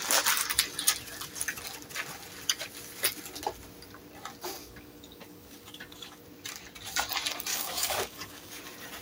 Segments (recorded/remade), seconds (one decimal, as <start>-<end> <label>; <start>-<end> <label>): 0.0-4.6 recorded; 4.6-6.2 remade; 6.2-7.5 recorded; 7.5-8.6 remade; 8.6-9.0 recorded